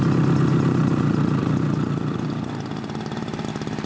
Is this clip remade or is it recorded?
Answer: recorded